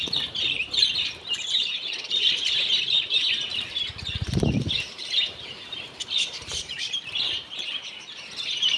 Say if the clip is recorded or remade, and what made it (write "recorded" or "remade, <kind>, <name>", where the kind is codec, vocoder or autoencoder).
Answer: remade, vocoder, BigVGAN v2